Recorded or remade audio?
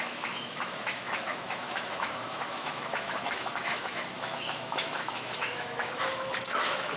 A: remade